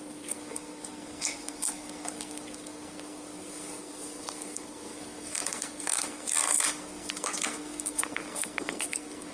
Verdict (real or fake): fake